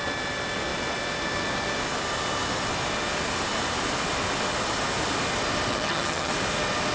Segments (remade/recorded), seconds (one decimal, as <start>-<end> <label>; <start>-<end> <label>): 0.0-5.7 recorded; 5.7-6.3 remade; 6.3-6.9 recorded